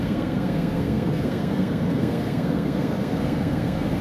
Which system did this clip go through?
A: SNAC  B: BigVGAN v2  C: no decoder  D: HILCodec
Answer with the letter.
A